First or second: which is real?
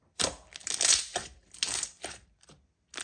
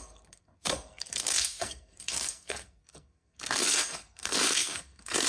first